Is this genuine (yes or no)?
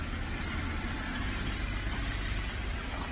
yes